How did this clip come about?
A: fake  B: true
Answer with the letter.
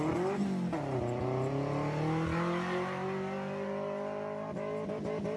B